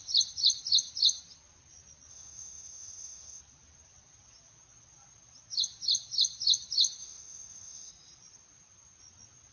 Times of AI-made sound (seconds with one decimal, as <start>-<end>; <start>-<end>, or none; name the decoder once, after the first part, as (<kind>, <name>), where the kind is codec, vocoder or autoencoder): 2.1-3.4 (autoencoder, DAC-VAE); 7.0-7.9